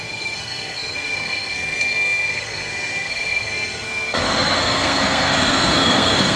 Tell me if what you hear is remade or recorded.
remade